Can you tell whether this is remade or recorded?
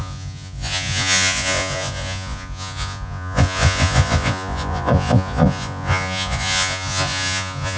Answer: remade